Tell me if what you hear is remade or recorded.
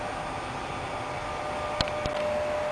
recorded